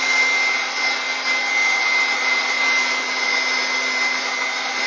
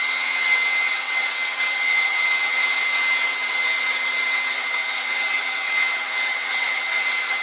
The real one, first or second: first